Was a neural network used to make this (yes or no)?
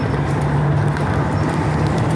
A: no